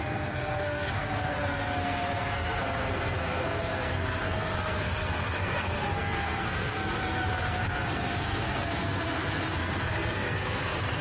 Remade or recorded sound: remade